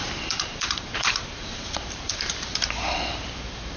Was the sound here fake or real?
fake